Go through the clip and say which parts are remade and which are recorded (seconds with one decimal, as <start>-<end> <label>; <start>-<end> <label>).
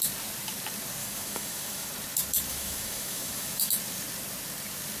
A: 0.0-1.0 recorded; 1.0-1.9 remade; 1.9-2.5 recorded; 2.5-3.7 remade; 3.7-5.0 recorded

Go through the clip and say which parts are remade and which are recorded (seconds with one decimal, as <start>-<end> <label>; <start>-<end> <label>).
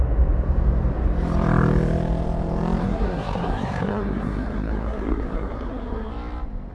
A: 0.0-2.8 recorded; 2.8-6.1 remade; 6.1-6.7 recorded